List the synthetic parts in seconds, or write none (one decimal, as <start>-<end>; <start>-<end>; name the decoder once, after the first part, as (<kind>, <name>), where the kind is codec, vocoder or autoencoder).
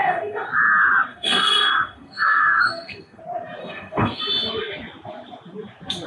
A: 0.0-0.5 (codec, SNAC); 1.1-3.2; 3.6-4.2